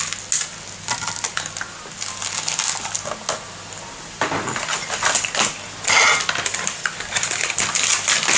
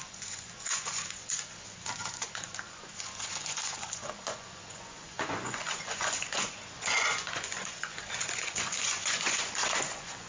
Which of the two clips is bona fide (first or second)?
first